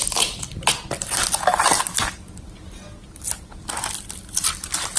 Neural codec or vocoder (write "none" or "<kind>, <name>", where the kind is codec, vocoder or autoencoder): none